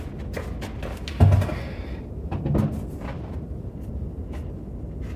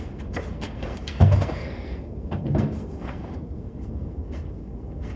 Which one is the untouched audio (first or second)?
first